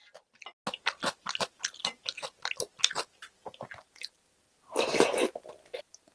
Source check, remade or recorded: recorded